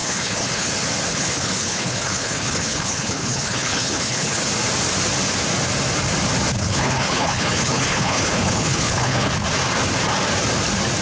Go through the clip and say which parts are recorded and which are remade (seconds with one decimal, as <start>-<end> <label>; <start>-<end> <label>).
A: 0.0-0.7 remade; 0.7-1.1 recorded; 1.1-4.5 remade; 4.5-6.6 recorded; 6.6-9.3 remade; 9.3-11.0 recorded